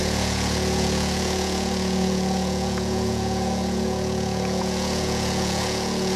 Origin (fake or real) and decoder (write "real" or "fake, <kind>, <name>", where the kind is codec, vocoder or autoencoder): fake, vocoder, Vocos